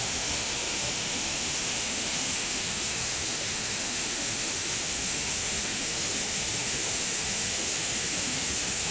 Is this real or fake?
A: fake